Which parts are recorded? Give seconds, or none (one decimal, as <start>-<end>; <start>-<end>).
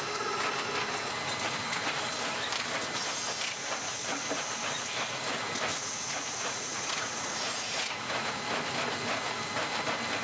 0.0-5.7; 8.4-10.2